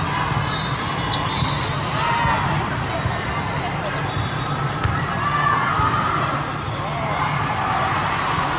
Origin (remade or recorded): recorded